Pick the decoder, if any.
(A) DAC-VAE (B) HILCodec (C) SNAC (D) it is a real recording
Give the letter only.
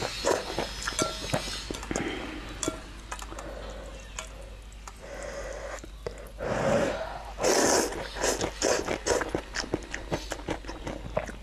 D